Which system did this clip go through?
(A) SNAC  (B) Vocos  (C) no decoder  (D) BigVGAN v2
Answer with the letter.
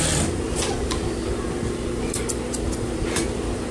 C